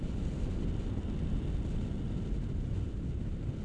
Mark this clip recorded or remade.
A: recorded